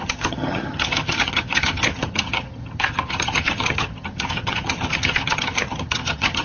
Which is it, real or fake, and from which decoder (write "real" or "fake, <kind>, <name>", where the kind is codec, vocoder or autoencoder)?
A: fake, vocoder, HiFi-GAN